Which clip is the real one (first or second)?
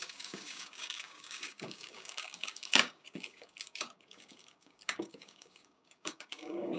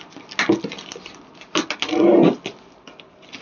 second